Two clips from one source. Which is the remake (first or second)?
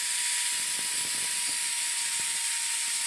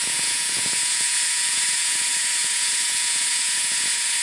second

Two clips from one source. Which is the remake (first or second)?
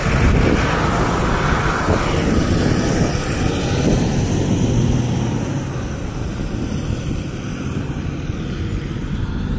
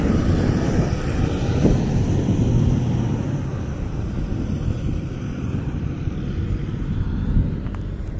second